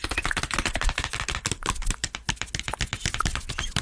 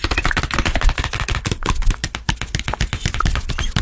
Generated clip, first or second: first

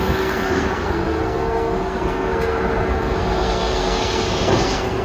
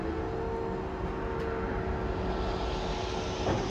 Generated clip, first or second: first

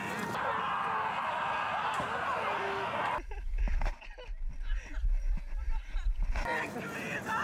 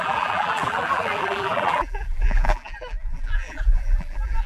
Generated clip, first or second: second